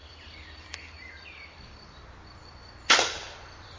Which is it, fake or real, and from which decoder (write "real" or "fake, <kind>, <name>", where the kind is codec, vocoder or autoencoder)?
fake, vocoder, BigVGAN v2